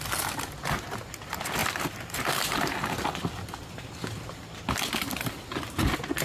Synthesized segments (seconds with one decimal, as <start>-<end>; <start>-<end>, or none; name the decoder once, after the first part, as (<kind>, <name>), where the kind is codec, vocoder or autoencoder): none